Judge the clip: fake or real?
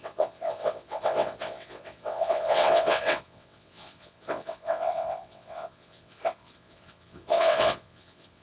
fake